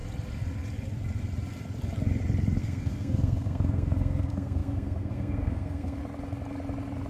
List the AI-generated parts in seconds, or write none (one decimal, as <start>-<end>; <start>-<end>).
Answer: 2.6-6.0